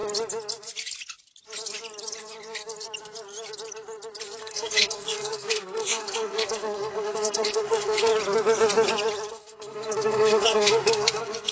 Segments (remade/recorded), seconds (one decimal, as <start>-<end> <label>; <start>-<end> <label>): 0.0-4.4 recorded; 4.4-8.1 remade; 8.1-9.3 recorded; 9.3-11.5 remade